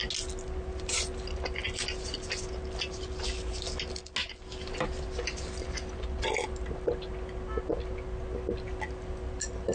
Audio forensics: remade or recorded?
recorded